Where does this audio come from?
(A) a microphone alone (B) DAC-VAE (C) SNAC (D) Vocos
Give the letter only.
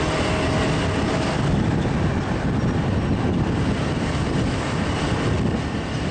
A